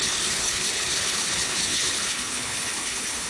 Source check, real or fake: fake